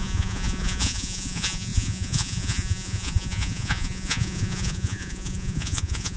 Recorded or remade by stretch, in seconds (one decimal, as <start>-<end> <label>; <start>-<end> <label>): 0.0-6.2 remade